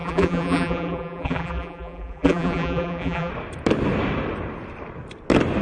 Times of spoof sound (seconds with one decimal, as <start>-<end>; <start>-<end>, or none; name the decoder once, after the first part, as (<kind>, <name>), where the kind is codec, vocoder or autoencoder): 0.0-3.3 (vocoder, BigVGAN v2)